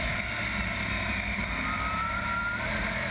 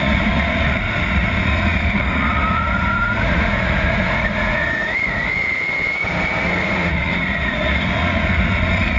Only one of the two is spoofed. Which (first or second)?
second